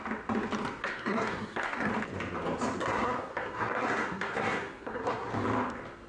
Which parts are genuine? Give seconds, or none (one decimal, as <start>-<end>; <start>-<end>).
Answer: 0.0-0.8; 1.9-2.8; 5.3-6.1